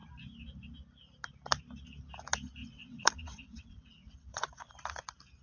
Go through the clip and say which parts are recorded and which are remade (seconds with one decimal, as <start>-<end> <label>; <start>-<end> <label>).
0.0-2.6 recorded; 2.6-4.7 remade; 4.7-5.4 recorded